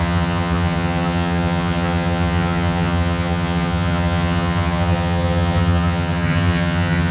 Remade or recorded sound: remade